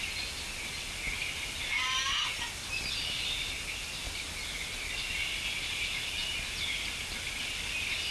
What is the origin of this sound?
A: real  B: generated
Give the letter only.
A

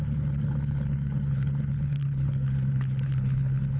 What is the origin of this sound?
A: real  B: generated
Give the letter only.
B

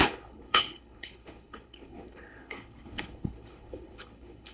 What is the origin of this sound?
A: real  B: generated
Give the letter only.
B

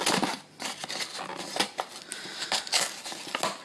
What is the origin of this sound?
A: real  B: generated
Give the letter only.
A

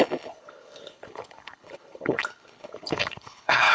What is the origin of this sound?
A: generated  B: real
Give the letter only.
A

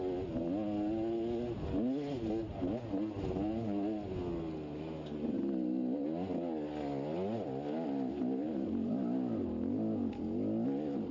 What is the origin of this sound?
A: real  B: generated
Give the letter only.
A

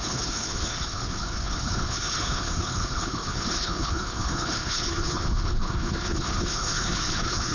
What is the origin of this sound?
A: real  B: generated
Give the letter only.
B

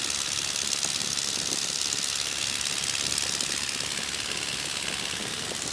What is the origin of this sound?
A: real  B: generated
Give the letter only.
A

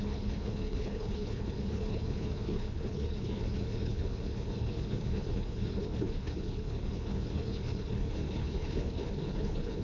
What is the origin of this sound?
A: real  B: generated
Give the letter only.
B